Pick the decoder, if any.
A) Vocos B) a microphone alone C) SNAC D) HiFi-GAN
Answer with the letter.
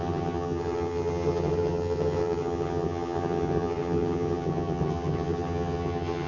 D